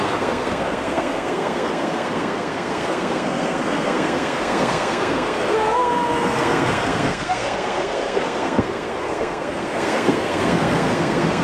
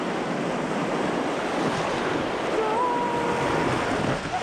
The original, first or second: second